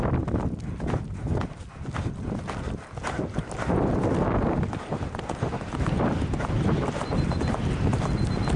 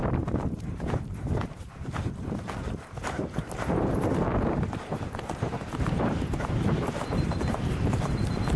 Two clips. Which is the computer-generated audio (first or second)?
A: second